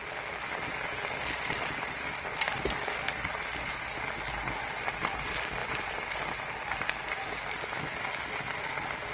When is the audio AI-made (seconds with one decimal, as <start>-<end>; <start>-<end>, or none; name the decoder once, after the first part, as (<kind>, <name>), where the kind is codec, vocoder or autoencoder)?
none